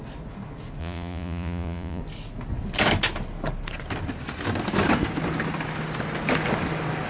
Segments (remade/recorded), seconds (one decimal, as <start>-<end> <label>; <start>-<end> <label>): 0.0-0.8 recorded; 0.8-2.0 remade; 2.0-7.1 recorded